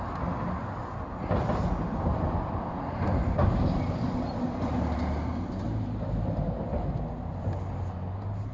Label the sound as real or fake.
real